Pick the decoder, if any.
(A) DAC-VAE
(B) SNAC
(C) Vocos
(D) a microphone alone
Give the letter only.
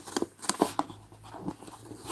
D